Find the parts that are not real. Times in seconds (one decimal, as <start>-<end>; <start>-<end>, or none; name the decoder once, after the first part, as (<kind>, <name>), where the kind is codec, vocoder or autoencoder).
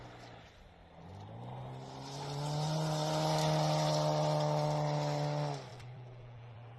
5.7-6.8 (vocoder, BigVGAN v2)